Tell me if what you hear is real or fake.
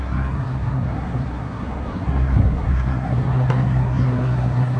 fake